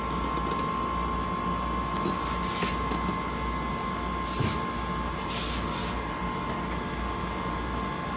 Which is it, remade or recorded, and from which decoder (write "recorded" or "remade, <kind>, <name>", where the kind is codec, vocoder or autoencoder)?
recorded